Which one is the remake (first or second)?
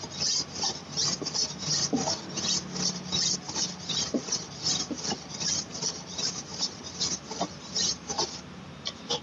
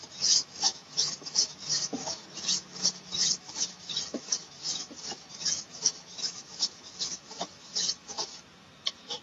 second